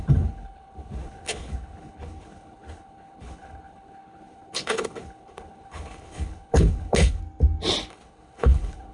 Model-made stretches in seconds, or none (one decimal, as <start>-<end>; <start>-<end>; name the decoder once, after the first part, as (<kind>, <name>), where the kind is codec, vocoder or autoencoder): 0.0-7.2 (codec, HILCodec); 7.9-8.9